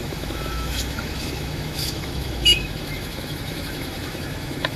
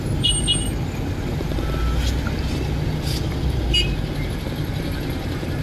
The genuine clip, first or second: second